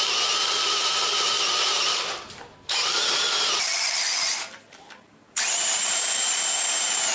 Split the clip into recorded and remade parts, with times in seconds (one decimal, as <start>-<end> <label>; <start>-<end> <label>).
0.0-4.3 recorded; 4.3-6.3 remade; 6.3-7.1 recorded